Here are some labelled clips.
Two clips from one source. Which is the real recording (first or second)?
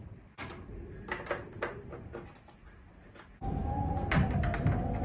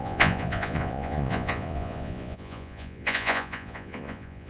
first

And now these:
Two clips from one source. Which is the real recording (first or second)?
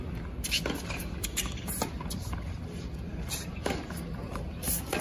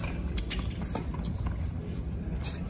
second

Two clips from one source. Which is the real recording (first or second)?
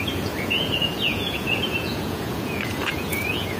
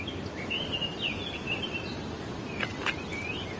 second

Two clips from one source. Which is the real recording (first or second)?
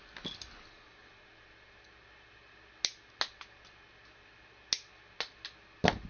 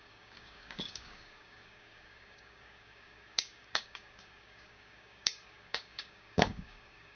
first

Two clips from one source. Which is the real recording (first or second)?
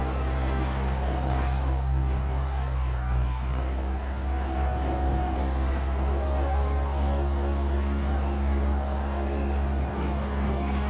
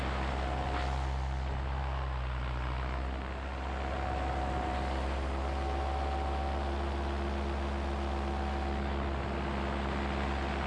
second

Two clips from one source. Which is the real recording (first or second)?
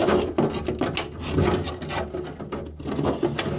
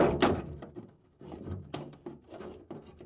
first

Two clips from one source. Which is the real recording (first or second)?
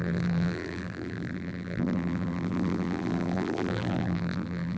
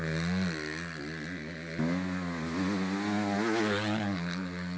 second